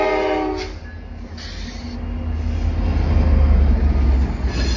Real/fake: real